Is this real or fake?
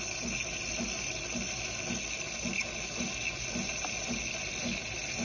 real